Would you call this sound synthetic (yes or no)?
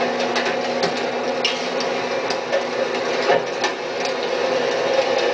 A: no